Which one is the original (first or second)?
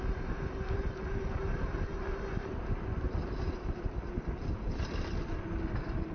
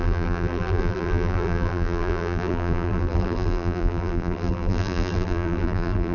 first